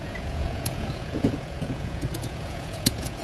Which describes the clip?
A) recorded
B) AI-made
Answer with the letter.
B